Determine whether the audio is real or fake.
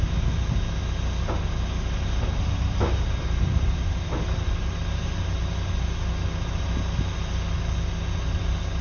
real